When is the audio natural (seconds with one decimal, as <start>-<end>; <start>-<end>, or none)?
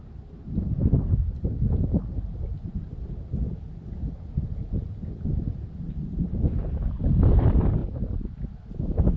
0.0-9.2